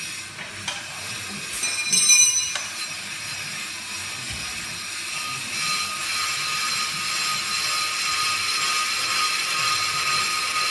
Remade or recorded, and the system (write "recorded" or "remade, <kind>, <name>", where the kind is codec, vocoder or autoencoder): recorded